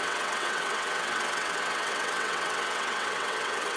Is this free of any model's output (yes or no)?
no